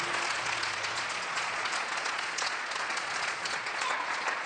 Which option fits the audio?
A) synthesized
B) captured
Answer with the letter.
A